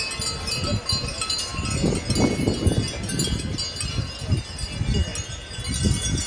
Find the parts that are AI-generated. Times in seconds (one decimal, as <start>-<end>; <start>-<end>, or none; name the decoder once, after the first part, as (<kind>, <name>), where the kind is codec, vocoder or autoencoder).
none